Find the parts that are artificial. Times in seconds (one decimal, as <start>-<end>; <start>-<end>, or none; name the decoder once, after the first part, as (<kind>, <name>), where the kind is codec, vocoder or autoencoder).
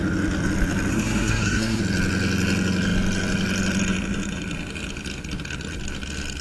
0.9-1.8 (codec, SNAC)